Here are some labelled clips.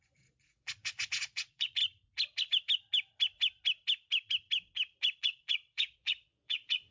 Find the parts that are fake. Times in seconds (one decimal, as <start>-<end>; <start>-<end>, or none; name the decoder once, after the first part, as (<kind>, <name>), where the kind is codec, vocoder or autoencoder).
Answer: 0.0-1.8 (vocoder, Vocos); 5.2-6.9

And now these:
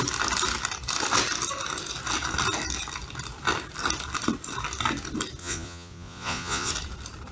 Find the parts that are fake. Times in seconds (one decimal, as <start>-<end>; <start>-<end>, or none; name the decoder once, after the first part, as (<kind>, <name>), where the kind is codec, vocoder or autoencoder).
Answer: 5.4-6.7 (vocoder, Vocos)

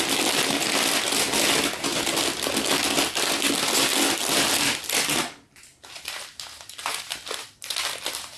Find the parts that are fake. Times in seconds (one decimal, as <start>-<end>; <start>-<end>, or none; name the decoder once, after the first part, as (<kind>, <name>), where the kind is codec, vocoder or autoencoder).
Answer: none

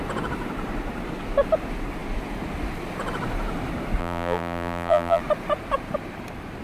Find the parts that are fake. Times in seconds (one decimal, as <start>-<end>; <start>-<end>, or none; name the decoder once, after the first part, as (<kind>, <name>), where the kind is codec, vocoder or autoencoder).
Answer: 4.0-5.2 (vocoder, BigVGAN v2)

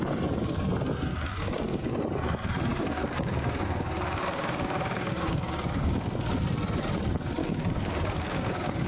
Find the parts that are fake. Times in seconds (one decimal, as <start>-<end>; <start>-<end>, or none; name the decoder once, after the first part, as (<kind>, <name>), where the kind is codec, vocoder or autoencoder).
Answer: 1.1-2.0 (codec, DAC); 2.7-6.1; 7.4-8.9